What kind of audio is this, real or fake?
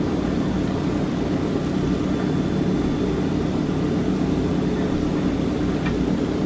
real